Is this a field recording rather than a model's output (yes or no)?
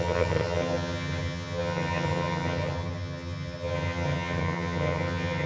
no